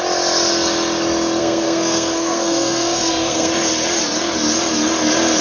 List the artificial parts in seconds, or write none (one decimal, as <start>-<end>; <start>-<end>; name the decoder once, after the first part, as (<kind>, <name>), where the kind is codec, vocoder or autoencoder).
1.4-3.5 (codec, SNAC)